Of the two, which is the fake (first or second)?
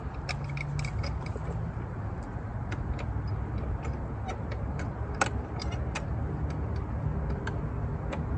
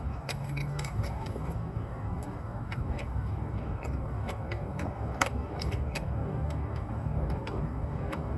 second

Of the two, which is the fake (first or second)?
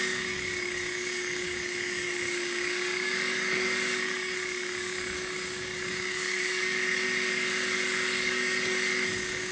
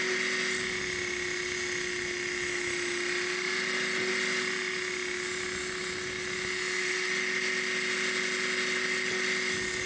first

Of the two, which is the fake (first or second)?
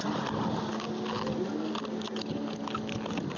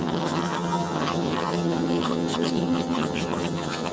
second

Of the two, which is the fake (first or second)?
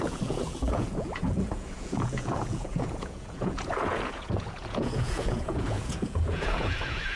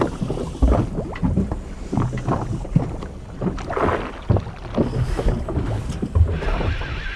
first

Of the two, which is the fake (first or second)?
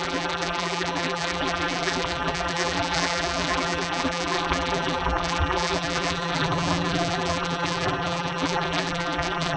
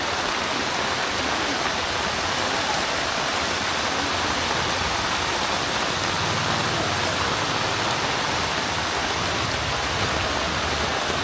first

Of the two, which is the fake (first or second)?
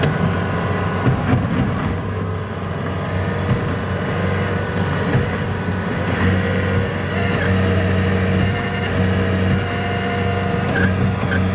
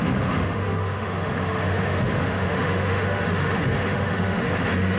second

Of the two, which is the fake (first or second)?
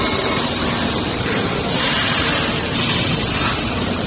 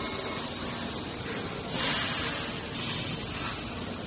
first